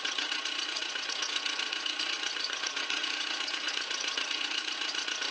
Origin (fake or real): fake